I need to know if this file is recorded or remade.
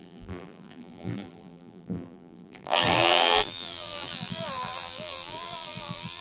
remade